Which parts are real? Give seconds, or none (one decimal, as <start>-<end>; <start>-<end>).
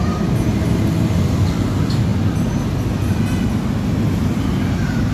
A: 0.0-5.1